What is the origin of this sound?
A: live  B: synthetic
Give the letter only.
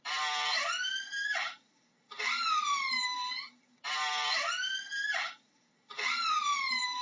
B